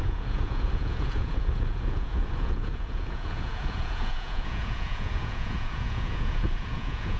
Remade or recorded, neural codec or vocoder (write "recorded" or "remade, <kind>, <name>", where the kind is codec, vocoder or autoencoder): remade, vocoder, Vocos